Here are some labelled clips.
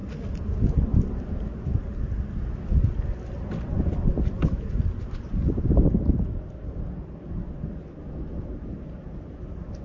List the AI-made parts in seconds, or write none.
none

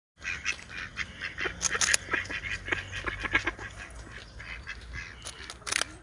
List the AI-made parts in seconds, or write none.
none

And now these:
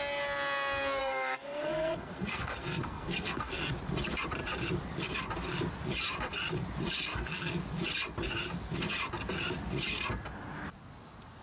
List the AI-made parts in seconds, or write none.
1.0-3.7; 7.1-7.6

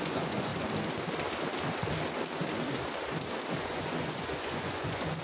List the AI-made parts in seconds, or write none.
0.0-0.5; 3.6-5.2

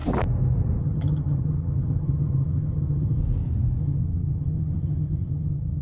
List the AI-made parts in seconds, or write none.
0.8-3.2; 3.8-5.8

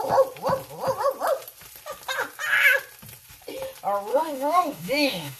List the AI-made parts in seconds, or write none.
4.1-5.4